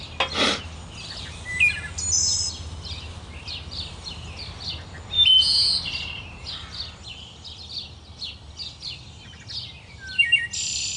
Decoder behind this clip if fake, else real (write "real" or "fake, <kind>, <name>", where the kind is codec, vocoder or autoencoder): real